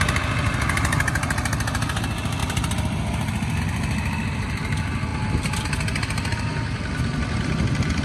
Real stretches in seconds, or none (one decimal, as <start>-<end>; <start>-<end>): 0.0-2.4; 3.6-5.1; 5.6-8.0